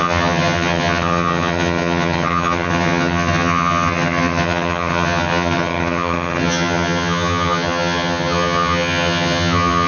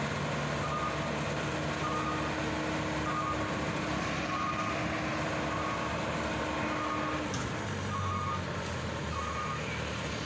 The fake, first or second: first